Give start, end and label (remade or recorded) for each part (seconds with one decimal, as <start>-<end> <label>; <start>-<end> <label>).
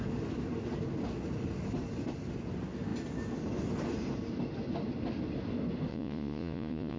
0.0-5.9 recorded; 5.9-7.0 remade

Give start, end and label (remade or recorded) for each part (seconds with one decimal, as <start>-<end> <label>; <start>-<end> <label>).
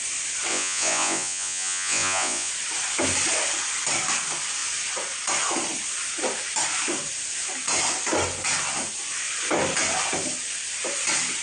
0.0-0.5 recorded; 0.5-2.5 remade; 2.5-11.4 recorded